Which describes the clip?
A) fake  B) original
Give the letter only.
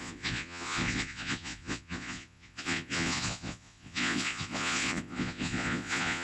A